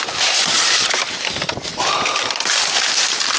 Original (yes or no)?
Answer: yes